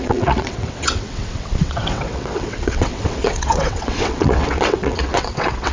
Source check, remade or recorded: remade